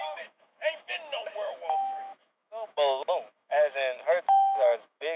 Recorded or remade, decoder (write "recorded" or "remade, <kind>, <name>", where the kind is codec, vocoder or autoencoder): remade, autoencoder, DAC-VAE